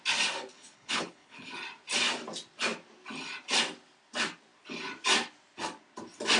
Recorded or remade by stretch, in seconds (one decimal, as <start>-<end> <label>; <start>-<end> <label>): 0.0-0.5 recorded; 0.5-1.5 remade; 1.5-6.4 recorded